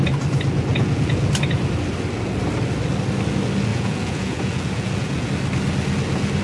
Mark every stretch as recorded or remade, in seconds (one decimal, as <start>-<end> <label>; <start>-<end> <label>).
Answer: 0.0-0.7 recorded; 0.7-1.3 remade; 1.3-3.7 recorded; 3.7-5.3 remade; 5.3-6.4 recorded